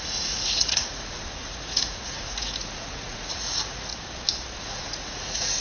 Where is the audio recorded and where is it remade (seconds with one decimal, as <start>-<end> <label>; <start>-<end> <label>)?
0.0-3.9 remade; 3.9-4.6 recorded; 4.6-5.6 remade